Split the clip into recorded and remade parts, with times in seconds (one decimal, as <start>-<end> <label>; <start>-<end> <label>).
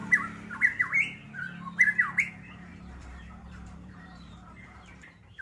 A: 0.0-2.3 recorded; 2.3-5.4 remade